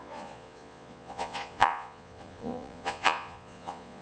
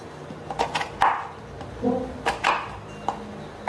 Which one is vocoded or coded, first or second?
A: first